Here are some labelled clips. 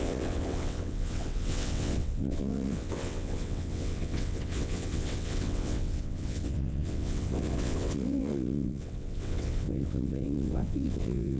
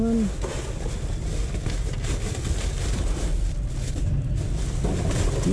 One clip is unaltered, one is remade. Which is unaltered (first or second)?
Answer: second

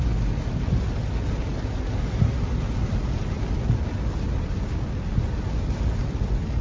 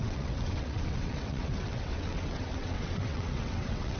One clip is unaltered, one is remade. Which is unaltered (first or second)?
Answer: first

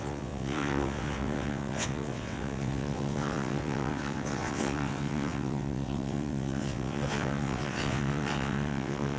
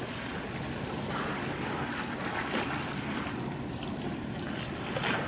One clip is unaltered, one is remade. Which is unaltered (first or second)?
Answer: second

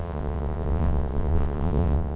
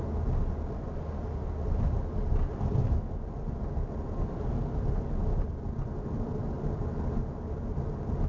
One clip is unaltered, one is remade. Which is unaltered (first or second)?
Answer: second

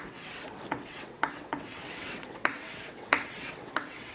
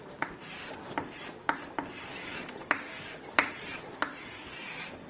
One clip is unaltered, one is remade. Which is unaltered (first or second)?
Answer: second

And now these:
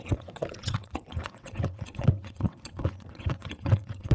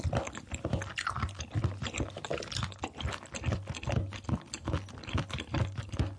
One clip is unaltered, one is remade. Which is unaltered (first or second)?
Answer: second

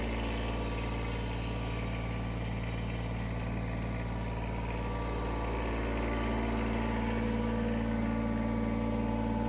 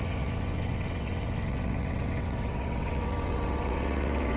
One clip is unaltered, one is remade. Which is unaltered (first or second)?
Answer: first